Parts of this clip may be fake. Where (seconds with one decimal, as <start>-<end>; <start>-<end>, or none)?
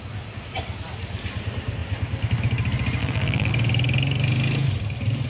3.0-3.5